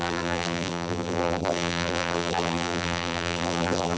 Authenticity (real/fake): fake